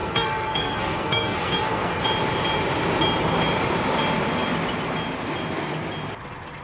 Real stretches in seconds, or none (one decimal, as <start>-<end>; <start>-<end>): 2.0-6.6